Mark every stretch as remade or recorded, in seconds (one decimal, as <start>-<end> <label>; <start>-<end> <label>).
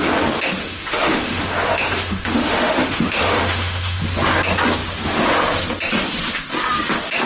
0.0-0.6 recorded; 0.6-4.0 remade; 4.0-7.3 recorded